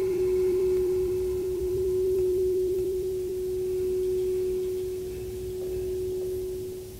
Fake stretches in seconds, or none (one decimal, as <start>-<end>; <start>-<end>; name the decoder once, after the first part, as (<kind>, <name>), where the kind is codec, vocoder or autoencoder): 0.0-3.3 (vocoder, BigVGAN v2)